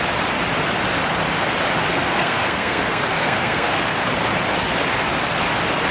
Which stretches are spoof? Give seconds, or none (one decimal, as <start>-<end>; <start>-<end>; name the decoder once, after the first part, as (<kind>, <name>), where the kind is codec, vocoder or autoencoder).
1.9-4.1 (codec, SNAC)